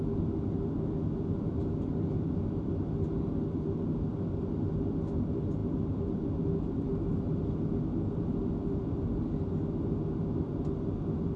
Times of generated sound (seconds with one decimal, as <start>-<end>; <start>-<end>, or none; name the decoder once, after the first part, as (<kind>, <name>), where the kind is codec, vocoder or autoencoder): none